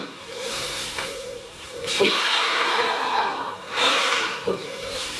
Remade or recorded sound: remade